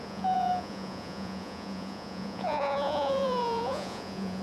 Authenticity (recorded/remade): remade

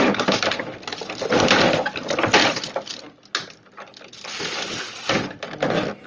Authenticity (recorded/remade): recorded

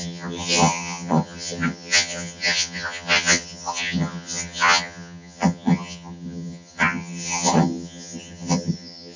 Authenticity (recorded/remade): remade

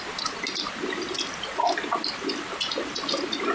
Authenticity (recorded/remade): recorded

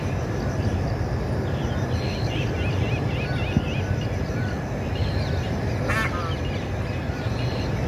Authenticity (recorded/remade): recorded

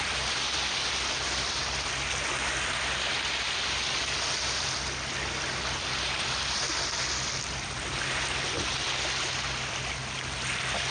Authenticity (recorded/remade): recorded